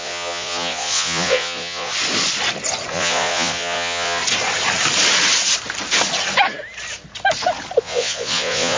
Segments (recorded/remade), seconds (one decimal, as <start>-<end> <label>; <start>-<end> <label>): 0.0-1.9 remade; 1.9-2.9 recorded; 2.9-4.2 remade; 4.2-7.8 recorded; 7.8-8.8 remade